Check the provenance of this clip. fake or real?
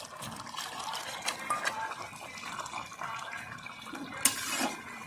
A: real